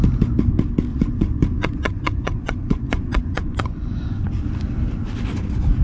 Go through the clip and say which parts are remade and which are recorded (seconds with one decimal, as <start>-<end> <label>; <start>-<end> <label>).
0.0-0.9 recorded; 0.9-4.4 remade; 4.4-5.8 recorded